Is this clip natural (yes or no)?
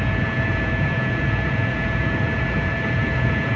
no